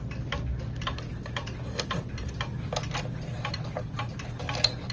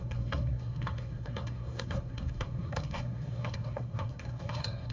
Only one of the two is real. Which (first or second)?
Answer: first